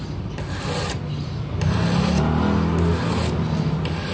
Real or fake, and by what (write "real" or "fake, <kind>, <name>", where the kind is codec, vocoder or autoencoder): real